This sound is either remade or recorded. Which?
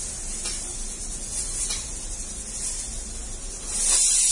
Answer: recorded